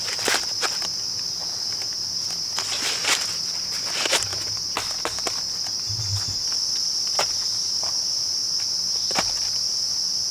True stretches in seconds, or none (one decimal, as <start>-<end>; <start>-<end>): 0.0-10.3